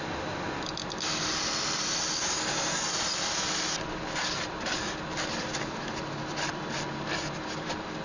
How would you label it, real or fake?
real